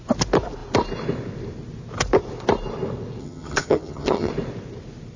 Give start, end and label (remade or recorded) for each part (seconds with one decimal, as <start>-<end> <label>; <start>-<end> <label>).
0.0-3.2 recorded; 3.2-4.3 remade; 4.3-5.2 recorded